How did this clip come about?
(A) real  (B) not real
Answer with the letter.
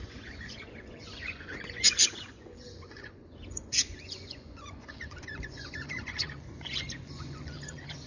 B